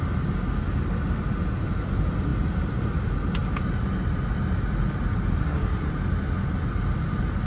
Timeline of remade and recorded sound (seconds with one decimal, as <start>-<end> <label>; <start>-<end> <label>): 0.0-5.4 recorded; 5.4-5.9 remade; 5.9-7.5 recorded